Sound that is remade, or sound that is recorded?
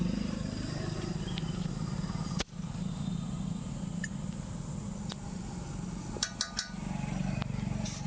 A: recorded